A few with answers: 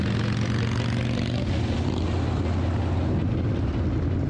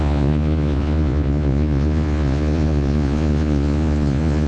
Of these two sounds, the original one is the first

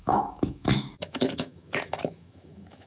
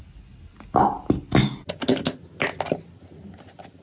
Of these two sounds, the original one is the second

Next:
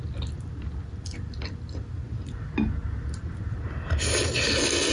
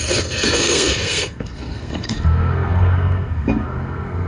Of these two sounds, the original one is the first